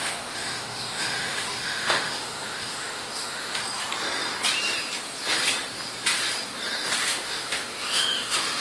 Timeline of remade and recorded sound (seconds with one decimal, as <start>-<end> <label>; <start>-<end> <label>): 0.0-3.6 remade; 3.6-7.0 recorded; 7.0-8.6 remade